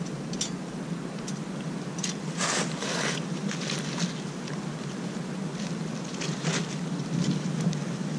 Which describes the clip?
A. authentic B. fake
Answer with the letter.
A